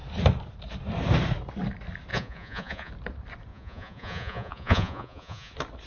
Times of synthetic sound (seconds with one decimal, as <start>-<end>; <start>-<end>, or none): 2.1-2.9; 3.5-5.5